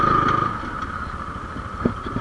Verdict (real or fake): real